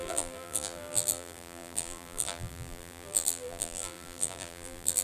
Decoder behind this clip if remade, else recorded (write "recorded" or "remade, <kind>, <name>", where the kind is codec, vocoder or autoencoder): remade, vocoder, BigVGAN v2